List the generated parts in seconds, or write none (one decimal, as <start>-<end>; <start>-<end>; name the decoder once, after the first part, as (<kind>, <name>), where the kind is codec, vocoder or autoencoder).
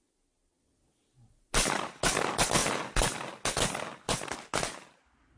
none